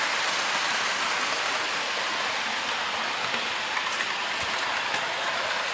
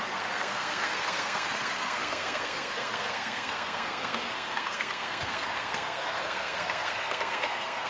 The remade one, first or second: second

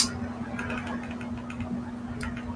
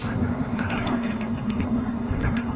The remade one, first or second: second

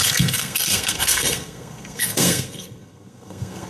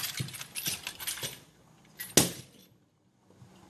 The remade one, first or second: first